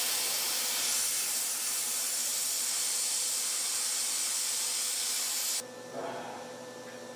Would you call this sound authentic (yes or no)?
yes